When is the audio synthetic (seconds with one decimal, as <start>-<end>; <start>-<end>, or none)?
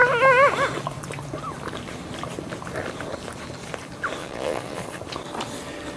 4.2-5.0